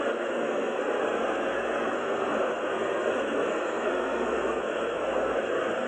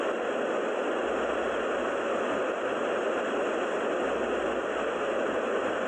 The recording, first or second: second